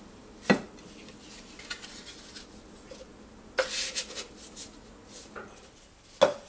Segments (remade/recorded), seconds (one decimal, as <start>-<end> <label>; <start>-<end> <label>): 0.0-4.6 recorded; 4.6-5.3 remade; 5.3-6.5 recorded